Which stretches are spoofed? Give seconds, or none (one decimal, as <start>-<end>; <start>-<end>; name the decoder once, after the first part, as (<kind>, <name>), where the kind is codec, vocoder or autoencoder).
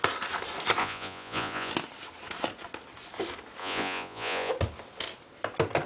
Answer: 0.8-1.7 (vocoder, Vocos); 3.6-4.5